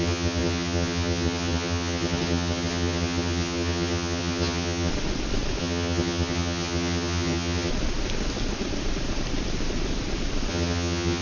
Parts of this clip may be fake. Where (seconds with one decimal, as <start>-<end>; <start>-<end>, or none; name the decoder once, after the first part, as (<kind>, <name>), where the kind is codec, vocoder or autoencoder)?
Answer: 0.0-4.9 (vocoder, HiFi-GAN); 5.6-7.7; 10.5-11.2